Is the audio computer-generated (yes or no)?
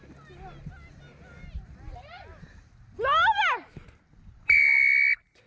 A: no